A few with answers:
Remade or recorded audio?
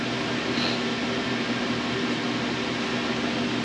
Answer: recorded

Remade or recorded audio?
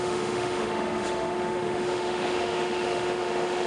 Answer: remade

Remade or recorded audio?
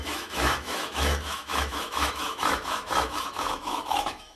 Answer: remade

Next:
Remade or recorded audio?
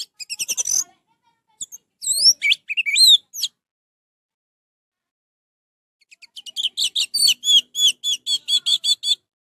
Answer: recorded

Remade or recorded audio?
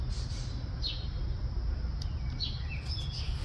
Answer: recorded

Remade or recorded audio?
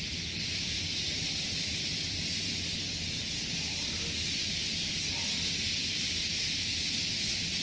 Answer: recorded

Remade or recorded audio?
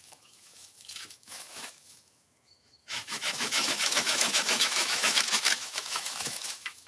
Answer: remade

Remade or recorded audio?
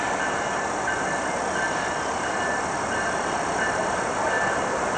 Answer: recorded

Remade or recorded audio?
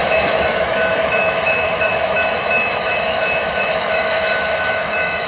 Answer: remade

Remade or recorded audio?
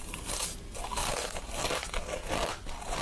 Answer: recorded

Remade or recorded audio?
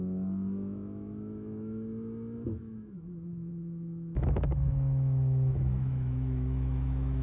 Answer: remade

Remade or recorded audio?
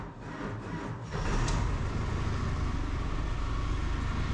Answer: recorded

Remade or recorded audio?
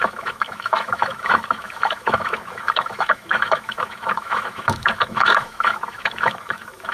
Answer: remade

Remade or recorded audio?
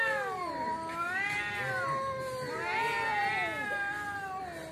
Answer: recorded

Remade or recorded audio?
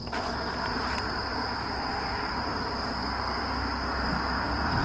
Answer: recorded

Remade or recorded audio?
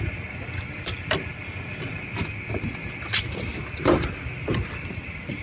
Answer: recorded